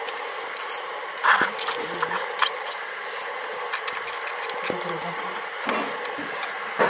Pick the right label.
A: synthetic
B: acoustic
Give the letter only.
B